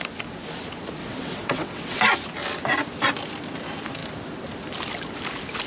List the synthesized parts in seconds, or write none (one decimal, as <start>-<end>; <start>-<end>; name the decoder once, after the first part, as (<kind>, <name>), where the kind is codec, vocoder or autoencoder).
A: 1.0-2.0 (vocoder, WaveNeXt)